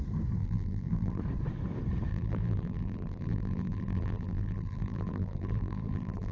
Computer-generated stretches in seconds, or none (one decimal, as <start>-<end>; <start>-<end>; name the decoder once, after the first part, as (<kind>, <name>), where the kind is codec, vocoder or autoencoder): 0.4-1.2 (vocoder, BigVGAN v2); 2.1-6.3